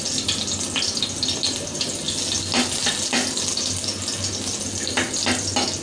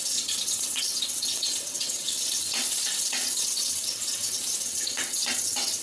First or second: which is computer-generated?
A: second